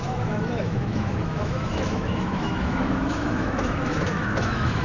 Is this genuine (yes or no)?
no